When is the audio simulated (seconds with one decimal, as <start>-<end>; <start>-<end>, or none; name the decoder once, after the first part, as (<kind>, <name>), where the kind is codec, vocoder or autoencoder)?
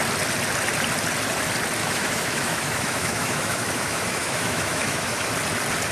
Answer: 1.8-5.3 (autoencoder, DAC-VAE)